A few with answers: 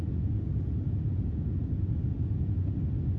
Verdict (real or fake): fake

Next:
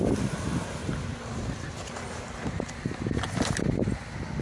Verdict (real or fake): real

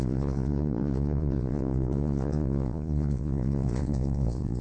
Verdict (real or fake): fake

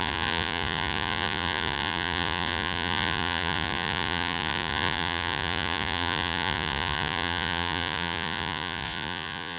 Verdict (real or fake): fake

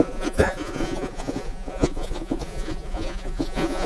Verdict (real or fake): fake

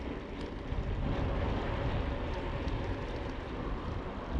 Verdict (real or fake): real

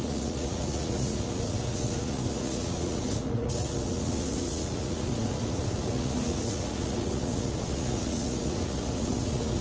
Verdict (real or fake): fake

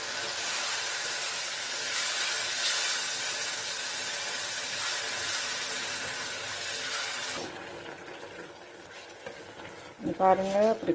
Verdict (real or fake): real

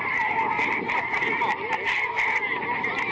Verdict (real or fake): real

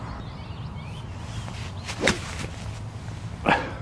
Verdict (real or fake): real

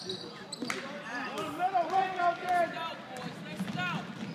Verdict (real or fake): real